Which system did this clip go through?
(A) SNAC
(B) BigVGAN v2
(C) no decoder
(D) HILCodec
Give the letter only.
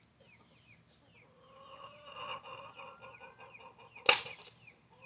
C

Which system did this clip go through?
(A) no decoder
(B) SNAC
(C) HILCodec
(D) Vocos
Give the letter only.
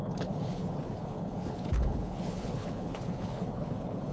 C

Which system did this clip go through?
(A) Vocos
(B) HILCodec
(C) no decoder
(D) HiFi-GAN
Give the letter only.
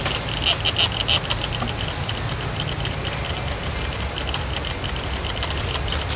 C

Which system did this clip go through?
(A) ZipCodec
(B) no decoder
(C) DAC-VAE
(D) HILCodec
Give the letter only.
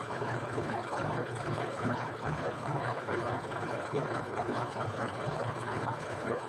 D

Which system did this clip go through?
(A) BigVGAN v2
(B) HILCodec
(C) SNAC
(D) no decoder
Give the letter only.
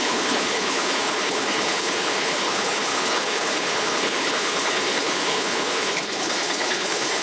B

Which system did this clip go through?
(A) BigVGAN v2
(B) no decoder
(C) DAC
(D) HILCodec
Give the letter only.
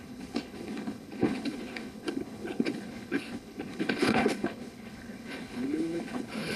D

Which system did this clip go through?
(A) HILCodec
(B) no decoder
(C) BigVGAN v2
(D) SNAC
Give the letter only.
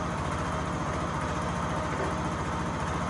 B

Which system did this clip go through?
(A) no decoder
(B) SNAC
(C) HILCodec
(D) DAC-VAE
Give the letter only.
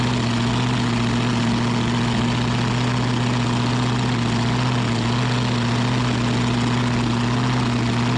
A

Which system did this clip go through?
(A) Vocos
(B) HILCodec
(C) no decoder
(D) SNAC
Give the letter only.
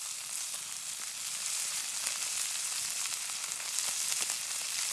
C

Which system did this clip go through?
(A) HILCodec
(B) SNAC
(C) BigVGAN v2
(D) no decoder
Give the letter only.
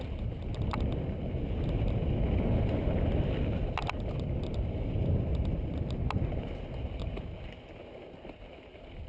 D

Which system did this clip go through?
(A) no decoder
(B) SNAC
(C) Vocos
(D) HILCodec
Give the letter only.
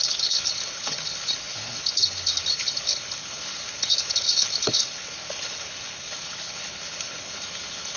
D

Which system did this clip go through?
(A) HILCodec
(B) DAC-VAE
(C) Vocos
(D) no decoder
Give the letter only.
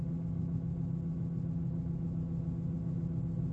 D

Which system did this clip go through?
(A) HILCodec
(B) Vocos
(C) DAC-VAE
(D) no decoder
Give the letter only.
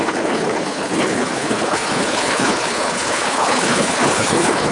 A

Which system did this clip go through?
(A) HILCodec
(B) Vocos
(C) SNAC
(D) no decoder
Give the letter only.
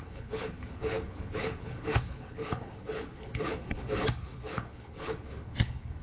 A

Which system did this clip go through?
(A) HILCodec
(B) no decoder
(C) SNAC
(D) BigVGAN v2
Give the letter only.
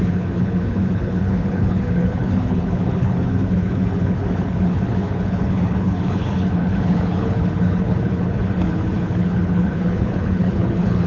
A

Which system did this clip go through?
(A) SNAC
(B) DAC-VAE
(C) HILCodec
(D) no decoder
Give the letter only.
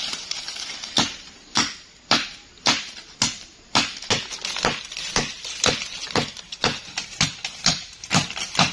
D